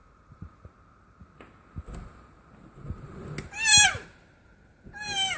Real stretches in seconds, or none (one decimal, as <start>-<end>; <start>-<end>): 0.7-3.7; 4.9-5.4